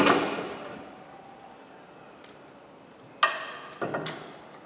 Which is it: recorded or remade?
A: recorded